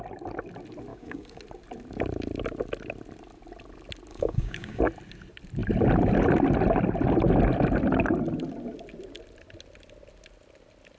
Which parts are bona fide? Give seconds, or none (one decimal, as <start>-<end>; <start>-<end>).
0.0-0.9; 1.4-4.1; 4.8-11.0